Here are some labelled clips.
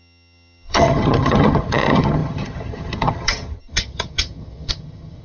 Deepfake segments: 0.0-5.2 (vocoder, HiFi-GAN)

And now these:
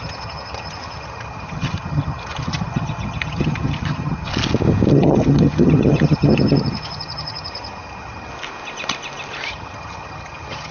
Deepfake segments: 0.0-4.3 (vocoder, HiFi-GAN); 4.9-8.3; 9.5-10.7

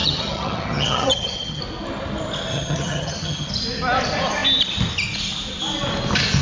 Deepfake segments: 0.0-1.6 (vocoder, HiFi-GAN); 2.5-3.5